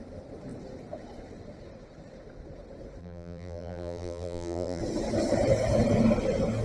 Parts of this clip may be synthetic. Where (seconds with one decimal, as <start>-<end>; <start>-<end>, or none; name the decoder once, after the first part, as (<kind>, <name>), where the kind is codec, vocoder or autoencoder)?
3.0-4.8 (vocoder, BigVGAN v2)